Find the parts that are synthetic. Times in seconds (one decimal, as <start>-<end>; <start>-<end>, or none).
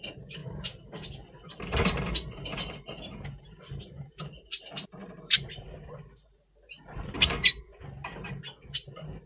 0.0-9.3